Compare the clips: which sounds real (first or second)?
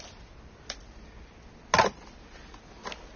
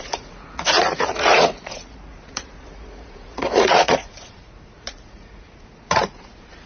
first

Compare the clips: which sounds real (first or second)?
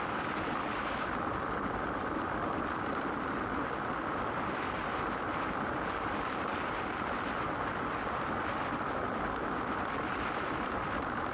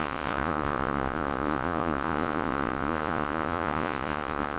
first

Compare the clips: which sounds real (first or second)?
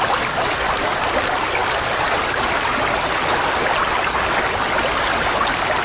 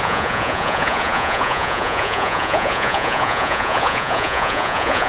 first